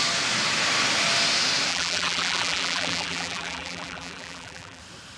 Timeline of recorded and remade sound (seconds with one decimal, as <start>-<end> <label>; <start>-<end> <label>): 0.0-1.7 recorded; 1.7-4.8 remade; 4.8-5.2 recorded